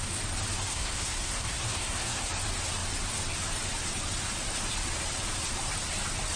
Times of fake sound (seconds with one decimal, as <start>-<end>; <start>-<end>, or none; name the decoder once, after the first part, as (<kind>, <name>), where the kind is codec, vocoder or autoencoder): 0.7-2.3 (codec, SNAC)